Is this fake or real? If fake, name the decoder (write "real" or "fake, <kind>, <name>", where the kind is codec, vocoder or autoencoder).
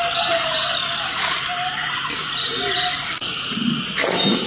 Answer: real